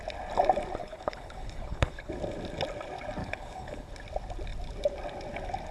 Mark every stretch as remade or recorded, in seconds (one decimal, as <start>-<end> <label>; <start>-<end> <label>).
0.0-0.8 recorded; 0.8-2.1 remade; 2.1-3.2 recorded; 3.2-3.9 remade; 3.9-5.7 recorded